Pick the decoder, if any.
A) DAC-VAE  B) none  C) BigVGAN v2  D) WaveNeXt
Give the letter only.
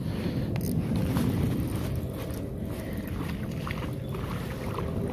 B